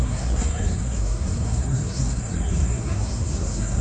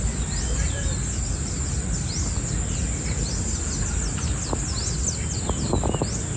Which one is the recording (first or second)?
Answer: second